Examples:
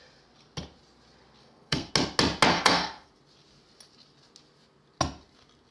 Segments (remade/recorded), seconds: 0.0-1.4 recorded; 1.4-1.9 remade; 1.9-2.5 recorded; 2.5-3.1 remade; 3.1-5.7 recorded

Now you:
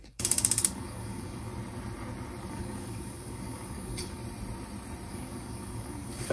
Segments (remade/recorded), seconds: 0.0-1.5 remade; 1.5-2.5 recorded; 2.5-4.2 remade; 4.2-5.1 recorded; 5.1-6.3 remade